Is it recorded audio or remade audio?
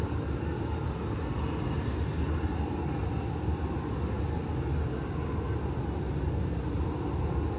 recorded